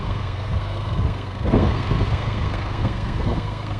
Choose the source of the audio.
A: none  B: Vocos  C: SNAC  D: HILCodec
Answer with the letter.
C